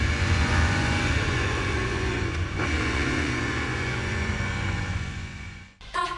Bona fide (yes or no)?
no